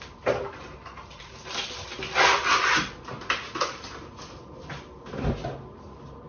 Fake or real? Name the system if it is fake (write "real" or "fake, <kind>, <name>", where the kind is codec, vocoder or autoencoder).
real